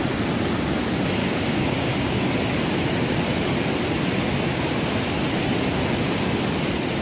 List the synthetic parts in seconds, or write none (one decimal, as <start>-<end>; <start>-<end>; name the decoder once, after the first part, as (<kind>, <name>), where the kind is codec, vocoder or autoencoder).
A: 1.2-2.3 (codec, DAC)

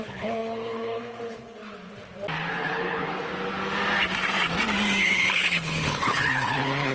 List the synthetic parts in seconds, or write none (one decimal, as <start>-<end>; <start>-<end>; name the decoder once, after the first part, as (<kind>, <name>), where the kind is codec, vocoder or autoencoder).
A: 0.0-1.6 (codec, HILCodec); 2.5-3.3; 5.0-6.9

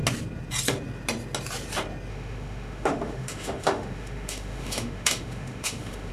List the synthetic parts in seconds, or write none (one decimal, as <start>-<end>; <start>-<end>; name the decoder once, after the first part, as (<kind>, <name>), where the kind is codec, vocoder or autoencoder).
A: 2.1-6.1 (autoencoder, DAC-VAE)

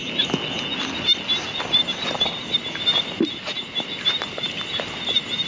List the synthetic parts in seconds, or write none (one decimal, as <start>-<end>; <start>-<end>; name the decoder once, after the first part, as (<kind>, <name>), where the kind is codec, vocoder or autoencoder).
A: none

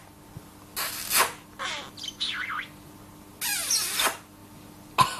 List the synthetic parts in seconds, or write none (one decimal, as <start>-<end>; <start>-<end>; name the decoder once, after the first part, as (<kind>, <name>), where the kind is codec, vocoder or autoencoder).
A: none

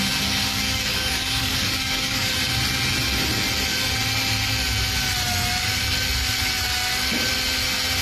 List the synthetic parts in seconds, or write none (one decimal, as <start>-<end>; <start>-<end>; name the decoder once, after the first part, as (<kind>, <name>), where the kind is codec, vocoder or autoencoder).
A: 0.5-2.3 (codec, DAC)